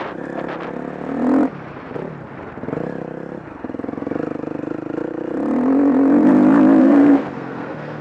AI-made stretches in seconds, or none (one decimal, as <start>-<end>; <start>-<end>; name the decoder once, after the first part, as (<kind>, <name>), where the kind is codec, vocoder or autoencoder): 6.8-8.0 (codec, SNAC)